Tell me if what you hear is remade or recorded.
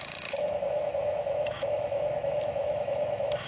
remade